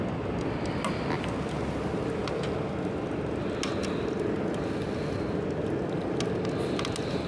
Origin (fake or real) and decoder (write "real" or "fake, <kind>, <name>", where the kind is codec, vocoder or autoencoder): real